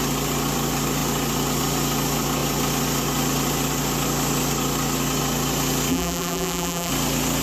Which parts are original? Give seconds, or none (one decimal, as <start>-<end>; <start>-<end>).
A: 0.0-5.9; 6.9-7.4